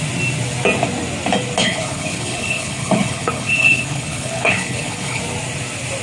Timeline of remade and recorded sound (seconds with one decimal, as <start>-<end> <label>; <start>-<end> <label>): 0.0-1.6 recorded; 1.6-5.2 remade; 5.2-6.0 recorded